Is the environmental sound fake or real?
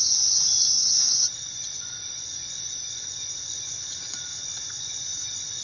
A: fake